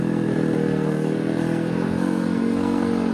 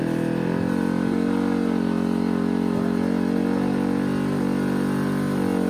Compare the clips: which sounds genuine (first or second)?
second